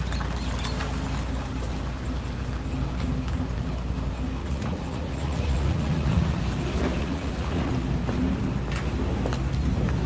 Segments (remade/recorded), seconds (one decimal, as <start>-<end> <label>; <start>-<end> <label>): 0.0-4.4 recorded; 4.4-6.4 remade; 6.4-7.0 recorded; 7.0-7.7 remade; 7.7-10.1 recorded